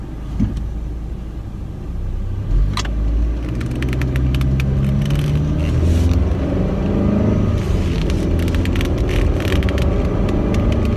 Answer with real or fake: real